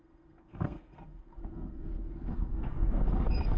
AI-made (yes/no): yes